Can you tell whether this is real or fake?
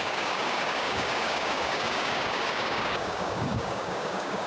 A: fake